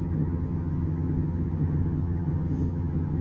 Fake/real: fake